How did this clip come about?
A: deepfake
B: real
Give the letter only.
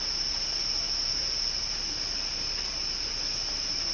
B